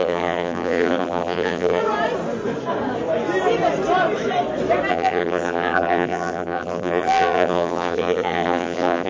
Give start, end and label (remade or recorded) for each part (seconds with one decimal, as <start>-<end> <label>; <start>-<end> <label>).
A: 0.0-1.8 remade; 1.8-4.9 recorded; 4.9-9.1 remade